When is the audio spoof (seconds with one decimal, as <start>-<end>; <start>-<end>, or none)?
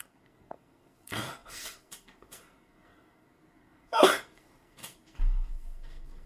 0.0-6.3